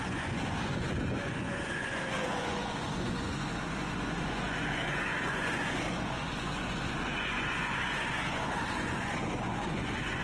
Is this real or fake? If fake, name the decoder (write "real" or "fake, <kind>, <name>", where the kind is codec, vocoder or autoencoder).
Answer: fake, vocoder, Vocos